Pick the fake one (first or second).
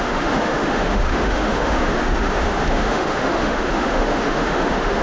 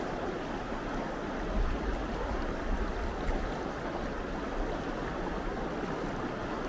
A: first